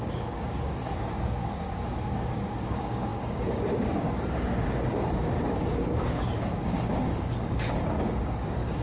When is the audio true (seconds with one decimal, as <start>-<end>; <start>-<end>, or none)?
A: none